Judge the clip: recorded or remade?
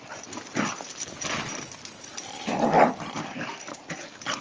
recorded